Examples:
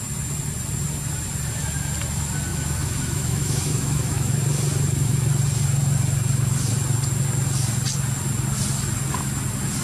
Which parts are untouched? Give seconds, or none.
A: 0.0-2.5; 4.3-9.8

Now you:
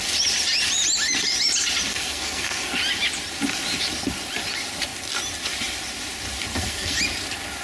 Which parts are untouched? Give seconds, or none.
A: 0.0-1.9; 2.8-6.5; 7.0-7.6